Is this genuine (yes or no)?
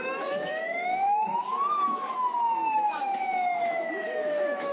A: no